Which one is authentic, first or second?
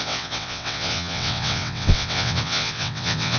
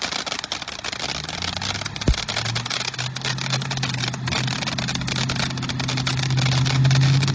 second